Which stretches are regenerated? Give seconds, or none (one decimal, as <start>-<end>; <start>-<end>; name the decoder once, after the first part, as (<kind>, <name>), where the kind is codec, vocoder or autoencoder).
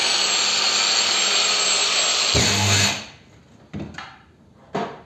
none